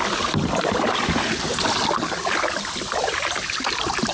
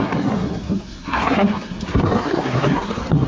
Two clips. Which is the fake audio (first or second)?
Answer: second